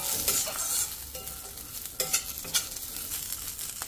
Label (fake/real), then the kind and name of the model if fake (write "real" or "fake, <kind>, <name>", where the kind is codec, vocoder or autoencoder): real